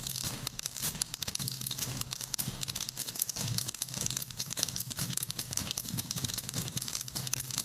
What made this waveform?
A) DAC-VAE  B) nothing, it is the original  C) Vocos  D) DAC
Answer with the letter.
D